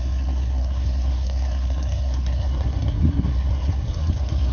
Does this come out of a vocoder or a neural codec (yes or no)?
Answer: yes